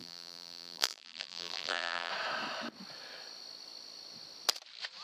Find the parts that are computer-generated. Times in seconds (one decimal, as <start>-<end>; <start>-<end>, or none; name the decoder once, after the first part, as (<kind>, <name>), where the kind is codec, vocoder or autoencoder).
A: 0.0-2.1 (vocoder, BigVGAN v2)